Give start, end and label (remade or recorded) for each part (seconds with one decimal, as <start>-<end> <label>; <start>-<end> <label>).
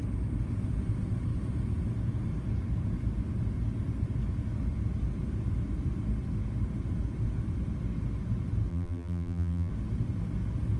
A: 0.0-8.7 recorded; 8.7-9.7 remade; 9.7-10.8 recorded